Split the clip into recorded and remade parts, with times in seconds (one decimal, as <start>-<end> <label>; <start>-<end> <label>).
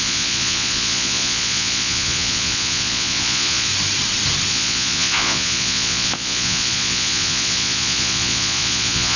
0.0-3.7 remade; 3.7-4.5 recorded; 4.5-9.2 remade